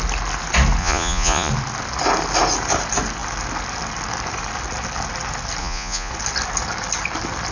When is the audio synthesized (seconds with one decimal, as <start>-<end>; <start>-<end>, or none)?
0.8-1.5; 5.6-6.1